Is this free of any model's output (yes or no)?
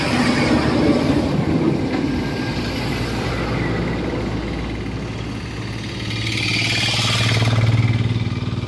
yes